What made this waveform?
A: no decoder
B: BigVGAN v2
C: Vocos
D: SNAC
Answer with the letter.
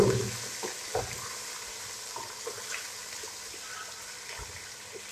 A